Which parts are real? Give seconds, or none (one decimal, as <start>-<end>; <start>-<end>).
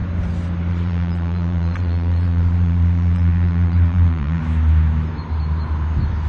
0.0-0.7; 4.4-6.3